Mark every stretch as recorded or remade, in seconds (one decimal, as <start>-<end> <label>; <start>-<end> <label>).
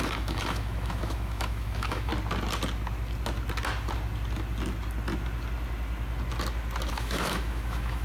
0.0-2.1 remade; 2.1-6.9 recorded; 6.9-8.0 remade